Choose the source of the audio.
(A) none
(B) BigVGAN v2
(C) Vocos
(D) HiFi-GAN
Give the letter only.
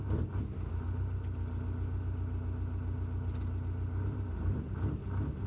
A